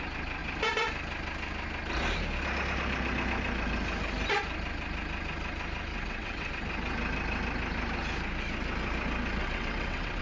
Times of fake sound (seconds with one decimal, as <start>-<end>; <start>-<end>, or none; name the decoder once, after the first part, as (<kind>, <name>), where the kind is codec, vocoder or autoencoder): 5.9-6.5 (vocoder, WaveNeXt); 9.4-10.2